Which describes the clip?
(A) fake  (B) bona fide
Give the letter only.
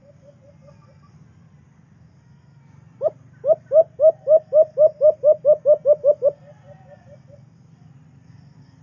B